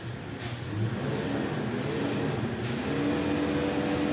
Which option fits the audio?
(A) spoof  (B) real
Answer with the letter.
B